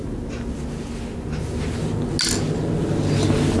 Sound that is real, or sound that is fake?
real